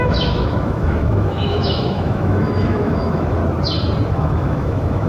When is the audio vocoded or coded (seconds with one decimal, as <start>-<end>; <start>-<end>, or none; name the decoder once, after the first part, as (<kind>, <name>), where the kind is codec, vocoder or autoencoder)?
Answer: 0.0-3.4 (autoencoder, DAC-VAE); 4.1-5.1